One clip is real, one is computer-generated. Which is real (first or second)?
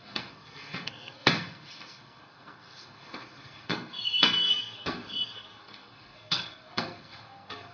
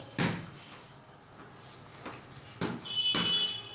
second